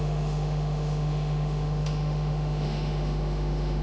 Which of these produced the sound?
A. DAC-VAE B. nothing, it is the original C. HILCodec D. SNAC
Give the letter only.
A